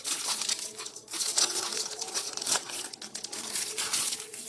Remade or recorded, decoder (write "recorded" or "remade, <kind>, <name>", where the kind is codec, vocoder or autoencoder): remade, vocoder, Vocos